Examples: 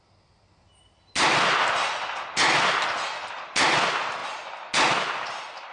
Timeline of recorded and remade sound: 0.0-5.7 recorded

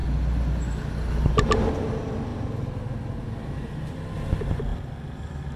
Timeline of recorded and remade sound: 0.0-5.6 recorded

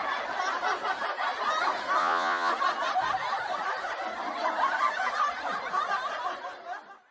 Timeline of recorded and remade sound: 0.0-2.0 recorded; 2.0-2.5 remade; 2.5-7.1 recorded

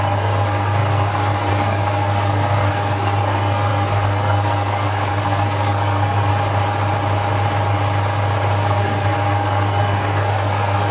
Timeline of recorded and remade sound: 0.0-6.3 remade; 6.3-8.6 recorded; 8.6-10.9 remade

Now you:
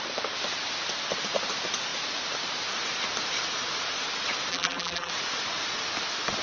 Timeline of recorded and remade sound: 0.0-4.5 recorded; 4.5-5.1 remade; 5.1-6.4 recorded

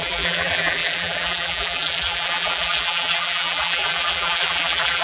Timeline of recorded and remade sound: 0.0-5.0 remade

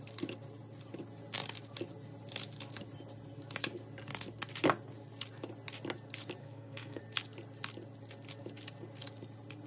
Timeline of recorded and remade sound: 0.0-6.4 recorded; 6.4-7.0 remade; 7.0-9.7 recorded